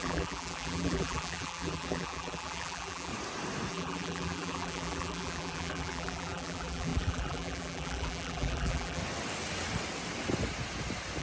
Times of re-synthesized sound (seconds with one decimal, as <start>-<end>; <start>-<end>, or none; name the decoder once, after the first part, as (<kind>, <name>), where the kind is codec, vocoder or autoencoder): 0.0-3.1 (vocoder, BigVGAN v2); 3.7-9.0